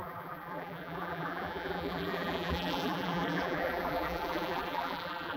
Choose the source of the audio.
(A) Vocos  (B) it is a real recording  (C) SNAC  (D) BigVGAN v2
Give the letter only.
D